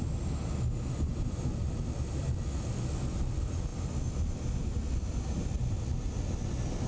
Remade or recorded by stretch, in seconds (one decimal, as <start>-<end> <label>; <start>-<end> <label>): 0.0-6.9 recorded

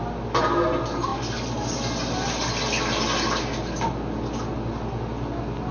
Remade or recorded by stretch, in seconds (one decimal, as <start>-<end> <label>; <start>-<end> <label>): 0.0-5.7 recorded

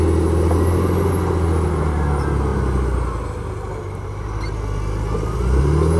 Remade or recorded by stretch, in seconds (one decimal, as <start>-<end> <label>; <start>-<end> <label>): 0.0-6.0 recorded

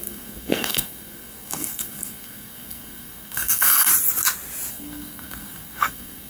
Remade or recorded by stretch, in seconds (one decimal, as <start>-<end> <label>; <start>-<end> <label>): 0.0-3.9 remade; 3.9-4.7 recorded; 4.7-6.3 remade

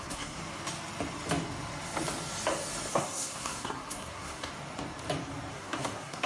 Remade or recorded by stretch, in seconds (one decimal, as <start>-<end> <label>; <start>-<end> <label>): 0.0-0.4 remade; 0.4-2.9 recorded; 2.9-4.5 remade; 4.5-5.5 recorded; 5.5-6.3 remade